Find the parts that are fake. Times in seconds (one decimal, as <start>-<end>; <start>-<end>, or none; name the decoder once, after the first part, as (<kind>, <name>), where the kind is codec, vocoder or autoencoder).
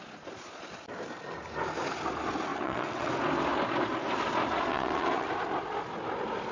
2.5-3.1 (vocoder, WaveNeXt); 4.7-5.3